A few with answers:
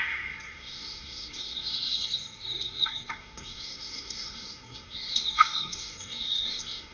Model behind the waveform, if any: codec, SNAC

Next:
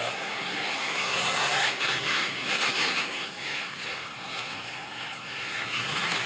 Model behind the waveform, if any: codec, SNAC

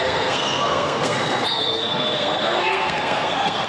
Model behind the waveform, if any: codec, SNAC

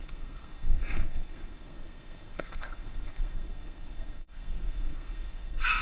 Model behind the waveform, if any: codec, SNAC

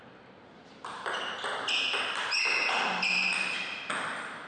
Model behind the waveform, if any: none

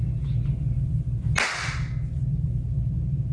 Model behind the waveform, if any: none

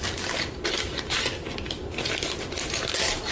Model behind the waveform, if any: none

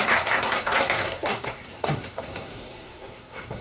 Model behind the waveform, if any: codec, SNAC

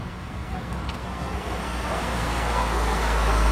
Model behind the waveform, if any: codec, SNAC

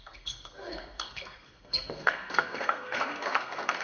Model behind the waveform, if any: codec, SNAC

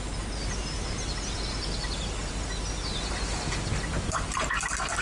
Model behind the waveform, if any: none